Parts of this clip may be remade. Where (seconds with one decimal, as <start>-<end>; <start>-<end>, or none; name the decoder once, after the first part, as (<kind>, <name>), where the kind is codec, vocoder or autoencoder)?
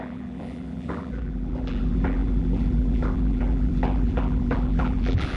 0.0-5.4 (vocoder, BigVGAN v2)